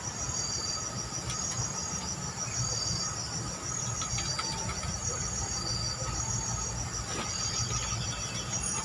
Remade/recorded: recorded